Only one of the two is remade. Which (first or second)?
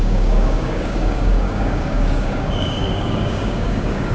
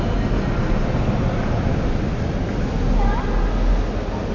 first